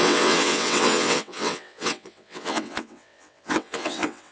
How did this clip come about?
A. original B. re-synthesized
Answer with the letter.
B